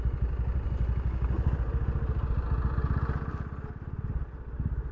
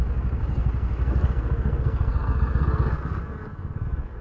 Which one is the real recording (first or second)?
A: first